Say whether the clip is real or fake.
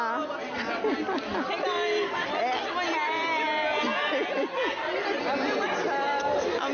real